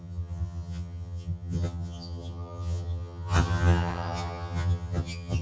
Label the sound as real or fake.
fake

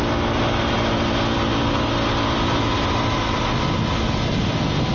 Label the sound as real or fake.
real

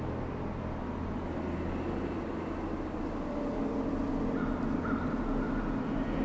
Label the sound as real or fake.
real